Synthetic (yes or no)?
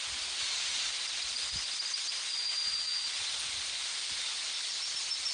no